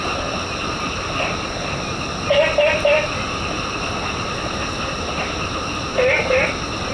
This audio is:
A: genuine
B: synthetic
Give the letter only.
A